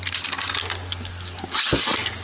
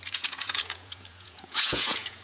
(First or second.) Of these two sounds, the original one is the first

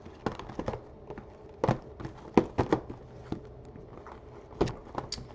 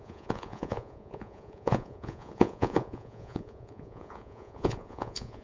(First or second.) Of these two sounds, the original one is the first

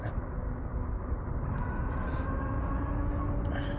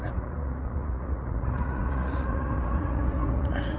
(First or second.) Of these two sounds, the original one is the first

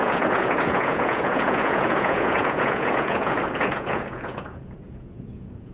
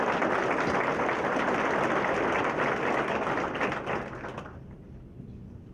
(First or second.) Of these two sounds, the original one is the second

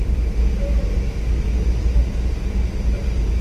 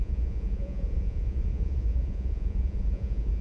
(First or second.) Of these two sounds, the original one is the first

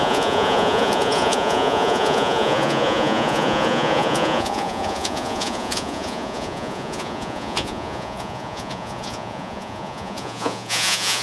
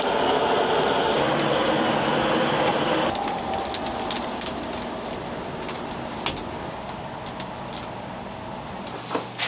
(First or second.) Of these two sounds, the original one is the second